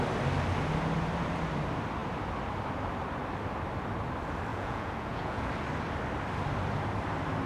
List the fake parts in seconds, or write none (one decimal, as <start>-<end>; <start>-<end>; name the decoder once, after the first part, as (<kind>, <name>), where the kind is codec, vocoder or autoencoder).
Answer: 4.5-5.5 (vocoder, Vocos)